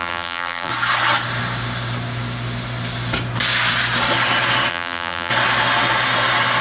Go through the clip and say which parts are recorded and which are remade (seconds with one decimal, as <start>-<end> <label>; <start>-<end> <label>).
0.0-0.7 remade; 0.7-4.7 recorded; 4.7-5.3 remade; 5.3-6.6 recorded